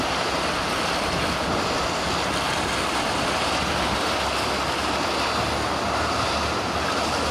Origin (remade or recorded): recorded